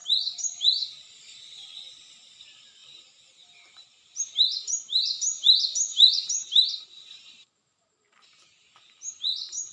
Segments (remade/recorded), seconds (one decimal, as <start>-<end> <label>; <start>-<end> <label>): 0.0-9.7 recorded